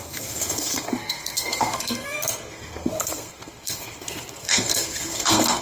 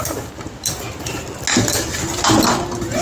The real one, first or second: second